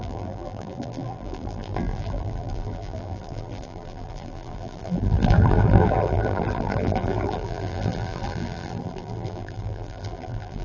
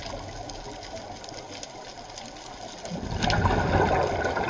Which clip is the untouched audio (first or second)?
second